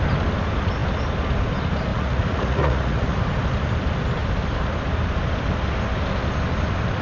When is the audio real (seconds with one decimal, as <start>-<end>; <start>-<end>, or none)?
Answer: 0.0-1.9; 3.2-7.0

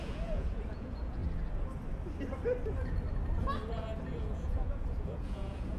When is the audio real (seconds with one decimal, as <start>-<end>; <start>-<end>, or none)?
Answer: 1.2-4.2

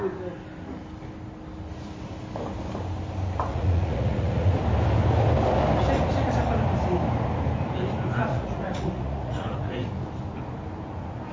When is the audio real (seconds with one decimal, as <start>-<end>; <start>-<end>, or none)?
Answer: 0.0-3.5; 4.6-8.3; 9.9-11.3

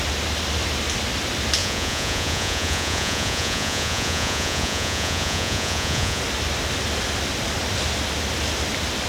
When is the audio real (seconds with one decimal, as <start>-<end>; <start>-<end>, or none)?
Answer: 0.0-1.6; 6.2-9.1

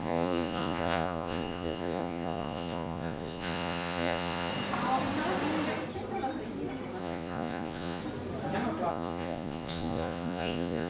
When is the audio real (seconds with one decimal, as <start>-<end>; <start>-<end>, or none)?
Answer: 4.5-7.0; 8.0-8.9